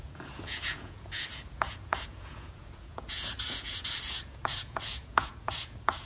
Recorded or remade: remade